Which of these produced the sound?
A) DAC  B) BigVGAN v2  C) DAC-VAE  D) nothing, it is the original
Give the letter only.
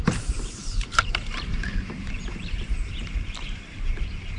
B